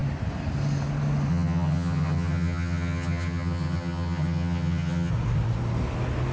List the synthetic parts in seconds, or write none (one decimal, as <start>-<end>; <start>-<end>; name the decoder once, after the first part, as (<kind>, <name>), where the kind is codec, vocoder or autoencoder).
1.3-5.1 (vocoder, HiFi-GAN)